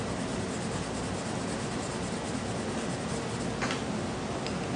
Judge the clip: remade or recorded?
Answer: recorded